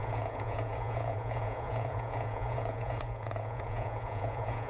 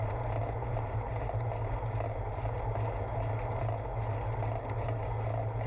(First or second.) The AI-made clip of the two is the first